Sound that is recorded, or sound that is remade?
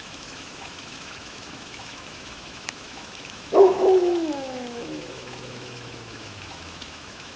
remade